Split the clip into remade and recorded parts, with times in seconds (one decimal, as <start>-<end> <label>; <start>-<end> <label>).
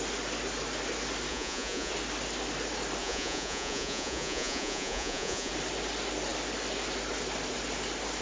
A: 0.0-1.3 recorded; 1.3-1.9 remade; 1.9-3.0 recorded; 3.0-5.5 remade; 5.5-8.2 recorded